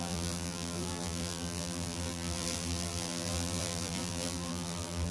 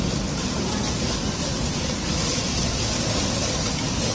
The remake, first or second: first